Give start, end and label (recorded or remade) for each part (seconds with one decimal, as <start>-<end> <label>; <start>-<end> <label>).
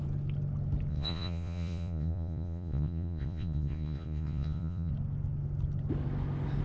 0.0-0.9 recorded; 0.9-4.9 remade; 4.9-6.6 recorded